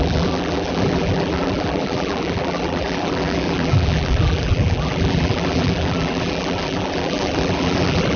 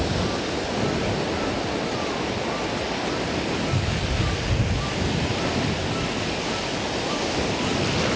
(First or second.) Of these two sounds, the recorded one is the second